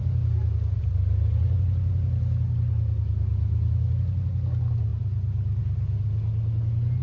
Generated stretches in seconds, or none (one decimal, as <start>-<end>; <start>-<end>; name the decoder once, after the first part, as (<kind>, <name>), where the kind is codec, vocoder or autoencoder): none